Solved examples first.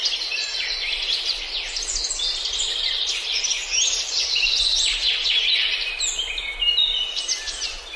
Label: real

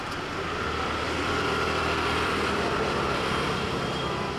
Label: fake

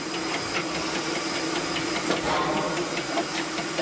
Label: real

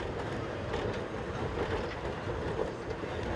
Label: real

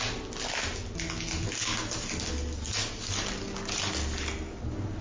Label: real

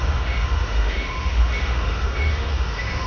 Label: fake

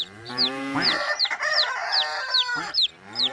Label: fake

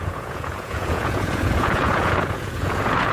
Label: fake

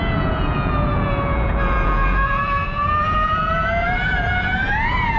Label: fake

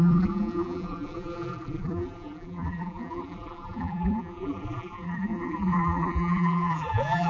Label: fake